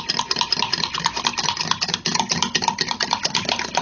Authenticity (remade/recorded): recorded